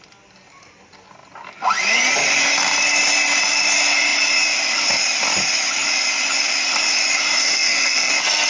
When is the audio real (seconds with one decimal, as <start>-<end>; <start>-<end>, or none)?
0.0-7.4; 8.1-8.5